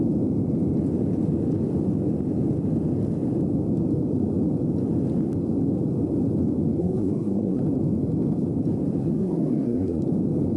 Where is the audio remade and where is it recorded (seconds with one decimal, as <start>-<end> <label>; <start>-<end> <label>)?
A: 0.0-6.8 recorded; 6.8-7.6 remade; 7.6-9.0 recorded; 9.0-10.0 remade; 10.0-10.6 recorded